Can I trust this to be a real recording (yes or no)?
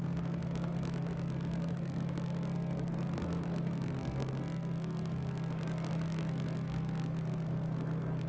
no